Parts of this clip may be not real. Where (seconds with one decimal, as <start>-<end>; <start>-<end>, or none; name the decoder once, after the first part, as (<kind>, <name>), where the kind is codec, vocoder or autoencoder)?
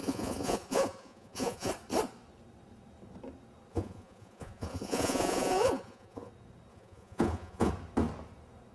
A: 0.0-1.7 (vocoder, Vocos); 3.7-6.3; 6.7-7.7